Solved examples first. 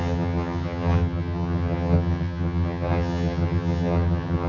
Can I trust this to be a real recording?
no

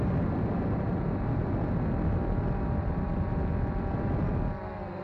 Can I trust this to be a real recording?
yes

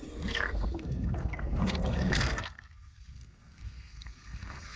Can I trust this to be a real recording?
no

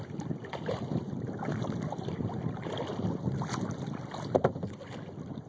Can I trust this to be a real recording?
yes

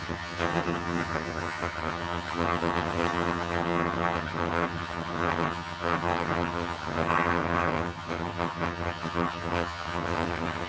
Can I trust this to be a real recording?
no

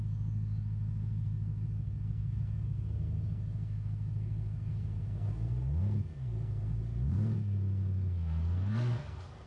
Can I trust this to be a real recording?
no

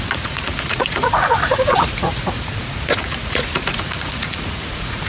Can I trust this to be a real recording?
no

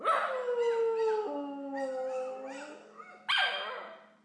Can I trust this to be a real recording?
yes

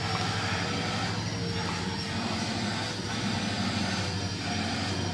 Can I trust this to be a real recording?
yes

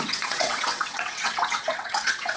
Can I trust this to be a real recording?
no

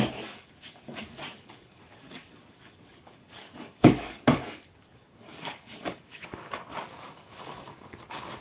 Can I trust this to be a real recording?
no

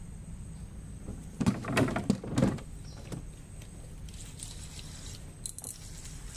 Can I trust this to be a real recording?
yes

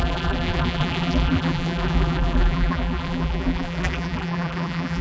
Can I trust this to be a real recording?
no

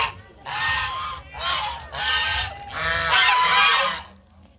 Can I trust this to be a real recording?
yes